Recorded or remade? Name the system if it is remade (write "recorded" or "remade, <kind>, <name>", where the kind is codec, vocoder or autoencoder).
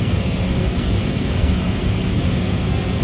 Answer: remade, codec, SNAC